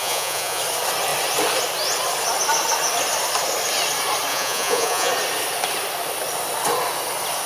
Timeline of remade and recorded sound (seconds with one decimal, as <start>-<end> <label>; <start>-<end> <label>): 0.0-0.6 remade; 0.6-4.3 recorded; 4.3-5.1 remade; 5.1-7.5 recorded